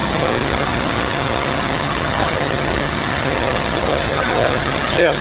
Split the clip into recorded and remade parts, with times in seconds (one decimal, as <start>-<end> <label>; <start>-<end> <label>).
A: 0.0-5.2 remade